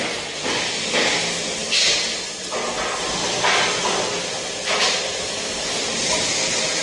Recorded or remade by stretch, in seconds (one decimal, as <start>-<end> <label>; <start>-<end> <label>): 0.0-6.8 recorded